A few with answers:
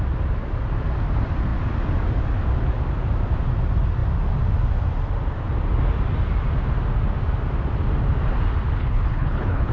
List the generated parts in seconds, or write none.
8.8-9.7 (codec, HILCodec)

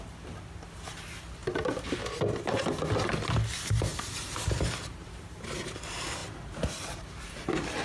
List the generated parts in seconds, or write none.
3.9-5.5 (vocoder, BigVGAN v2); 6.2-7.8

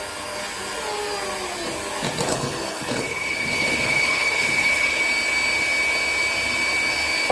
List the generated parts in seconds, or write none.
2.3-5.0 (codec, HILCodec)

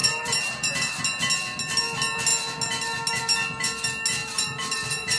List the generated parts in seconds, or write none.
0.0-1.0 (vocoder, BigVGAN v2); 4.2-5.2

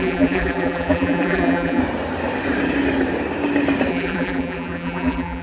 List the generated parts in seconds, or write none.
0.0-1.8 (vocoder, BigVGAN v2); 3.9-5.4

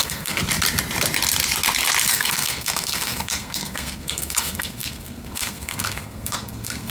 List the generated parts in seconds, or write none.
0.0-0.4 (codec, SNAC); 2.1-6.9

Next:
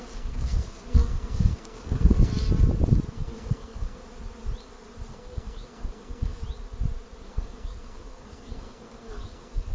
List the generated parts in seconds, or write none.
0.0-2.3 (codec, SNAC); 3.1-4.0; 5.1-6.4; 7.2-9.7

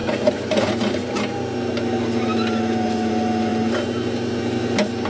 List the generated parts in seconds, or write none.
none